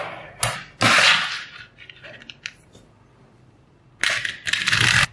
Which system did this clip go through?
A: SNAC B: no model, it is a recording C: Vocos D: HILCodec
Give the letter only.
B